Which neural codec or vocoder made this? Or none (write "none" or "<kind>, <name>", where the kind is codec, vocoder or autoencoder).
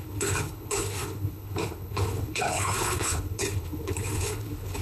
codec, HILCodec